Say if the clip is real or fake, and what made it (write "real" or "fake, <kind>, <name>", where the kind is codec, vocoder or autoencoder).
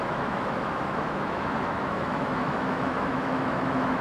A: fake, autoencoder, DAC-VAE